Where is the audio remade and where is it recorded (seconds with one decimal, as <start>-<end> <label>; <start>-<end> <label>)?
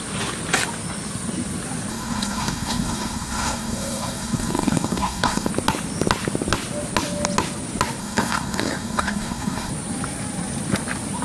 0.0-1.9 recorded; 1.9-5.5 remade; 5.5-8.0 recorded; 8.0-9.7 remade; 9.7-11.2 recorded